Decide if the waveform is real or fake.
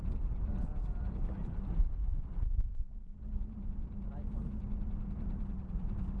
real